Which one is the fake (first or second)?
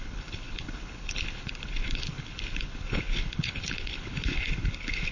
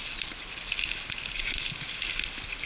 first